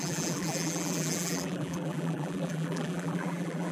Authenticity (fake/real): fake